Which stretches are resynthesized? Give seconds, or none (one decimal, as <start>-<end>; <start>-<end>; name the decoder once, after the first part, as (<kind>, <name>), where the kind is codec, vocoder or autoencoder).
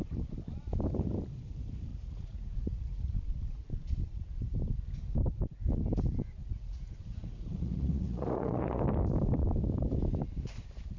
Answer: 1.9-3.1 (vocoder, Vocos); 6.4-8.8